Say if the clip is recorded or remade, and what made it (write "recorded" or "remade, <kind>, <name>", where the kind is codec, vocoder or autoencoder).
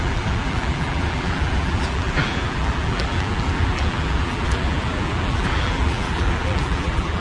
remade, vocoder, BigVGAN v2